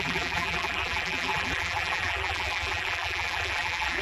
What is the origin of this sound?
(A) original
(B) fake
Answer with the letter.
B